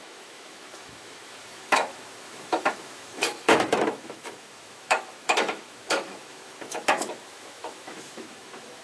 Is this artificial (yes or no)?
yes